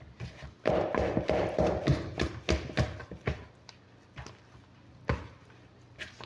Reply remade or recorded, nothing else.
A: recorded